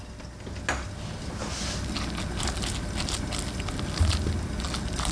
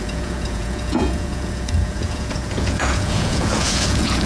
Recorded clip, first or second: first